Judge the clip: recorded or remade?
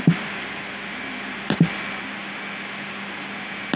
recorded